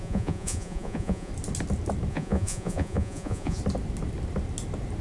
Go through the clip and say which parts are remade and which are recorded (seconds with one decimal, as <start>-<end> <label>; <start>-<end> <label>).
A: 0.0-1.3 remade; 1.3-2.1 recorded; 2.1-3.6 remade; 3.6-5.0 recorded